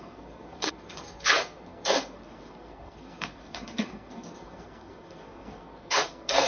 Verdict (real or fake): fake